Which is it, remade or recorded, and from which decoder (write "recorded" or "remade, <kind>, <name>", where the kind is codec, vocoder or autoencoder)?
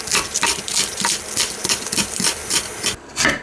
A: recorded